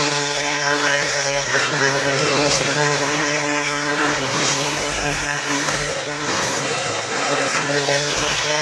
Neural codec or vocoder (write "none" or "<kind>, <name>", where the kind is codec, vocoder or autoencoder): codec, SNAC